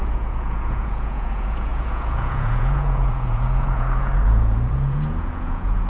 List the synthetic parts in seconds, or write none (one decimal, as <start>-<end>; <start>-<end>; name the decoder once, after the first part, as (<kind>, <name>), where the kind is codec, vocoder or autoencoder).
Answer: 0.0-5.9 (vocoder, Vocos)